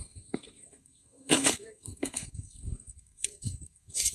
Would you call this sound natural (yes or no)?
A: no